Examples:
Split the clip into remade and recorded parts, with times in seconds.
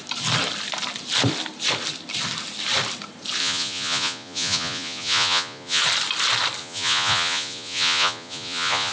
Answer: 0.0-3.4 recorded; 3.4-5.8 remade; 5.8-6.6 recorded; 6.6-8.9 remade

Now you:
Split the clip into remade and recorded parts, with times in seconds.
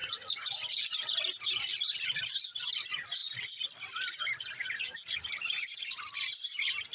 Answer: 0.0-6.9 recorded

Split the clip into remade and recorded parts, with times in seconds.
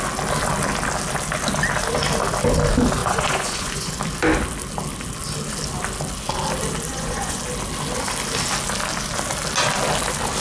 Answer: 0.0-3.0 recorded; 3.0-3.9 remade; 3.9-6.9 recorded; 6.9-7.4 remade; 7.4-10.4 recorded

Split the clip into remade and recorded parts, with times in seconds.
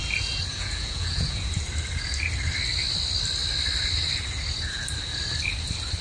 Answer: 0.0-0.5 recorded; 0.5-1.5 remade; 1.5-6.0 recorded